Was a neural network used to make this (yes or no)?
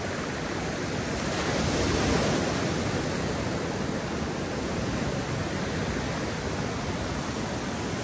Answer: no